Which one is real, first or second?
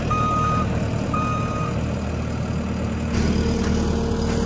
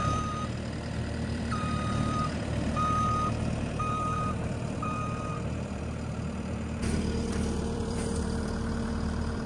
first